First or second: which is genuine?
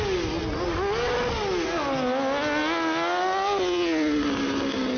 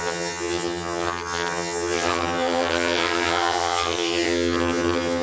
first